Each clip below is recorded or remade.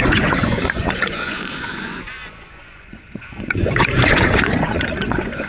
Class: remade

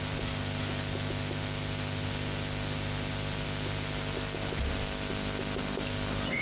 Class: recorded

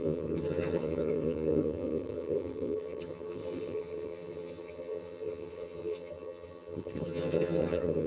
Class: remade